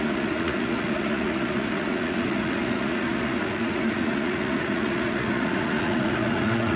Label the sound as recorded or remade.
remade